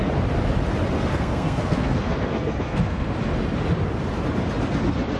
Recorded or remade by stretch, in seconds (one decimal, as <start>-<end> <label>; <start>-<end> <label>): 0.0-1.1 recorded; 1.1-3.1 remade; 3.1-5.2 recorded